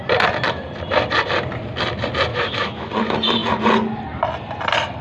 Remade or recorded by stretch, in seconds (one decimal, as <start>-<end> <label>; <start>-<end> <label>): 0.0-2.3 recorded; 2.3-2.9 remade; 2.9-5.0 recorded